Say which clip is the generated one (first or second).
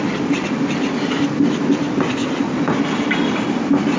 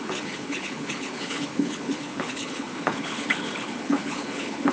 second